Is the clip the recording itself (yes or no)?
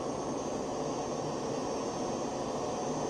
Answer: yes